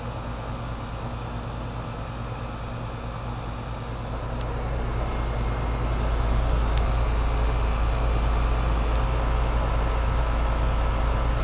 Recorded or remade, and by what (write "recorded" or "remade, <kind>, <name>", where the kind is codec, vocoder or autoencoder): recorded